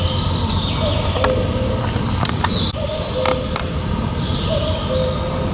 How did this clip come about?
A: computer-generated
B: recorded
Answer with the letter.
B